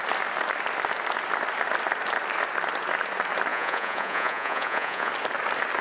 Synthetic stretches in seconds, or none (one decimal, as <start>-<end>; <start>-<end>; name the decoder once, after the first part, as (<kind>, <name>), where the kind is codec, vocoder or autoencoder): 3.5-5.1 (vocoder, Vocos)